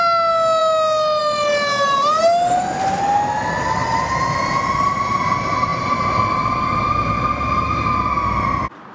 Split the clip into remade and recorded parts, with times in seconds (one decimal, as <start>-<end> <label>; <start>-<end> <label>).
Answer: 0.0-5.7 recorded; 5.7-8.1 remade; 8.1-8.9 recorded